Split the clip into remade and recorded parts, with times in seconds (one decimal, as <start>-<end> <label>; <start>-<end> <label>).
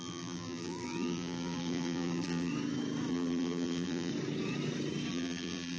0.0-2.5 remade; 2.5-3.1 recorded; 3.1-4.1 remade; 4.1-5.1 recorded; 5.1-5.8 remade